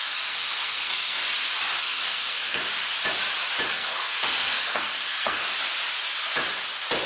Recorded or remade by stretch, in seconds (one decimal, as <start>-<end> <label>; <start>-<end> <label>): 0.0-1.2 remade; 1.2-1.8 recorded; 1.8-2.6 remade; 2.6-3.7 recorded; 3.7-5.4 remade; 5.4-7.1 recorded